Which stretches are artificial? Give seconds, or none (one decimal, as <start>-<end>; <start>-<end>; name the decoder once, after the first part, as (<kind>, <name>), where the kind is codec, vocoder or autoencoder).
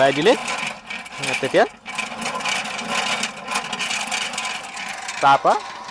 none